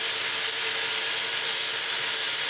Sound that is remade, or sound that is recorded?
recorded